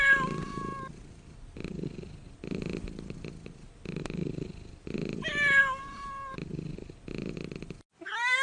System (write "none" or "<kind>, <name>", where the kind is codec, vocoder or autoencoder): none